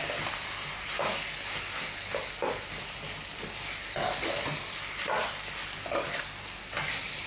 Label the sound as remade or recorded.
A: recorded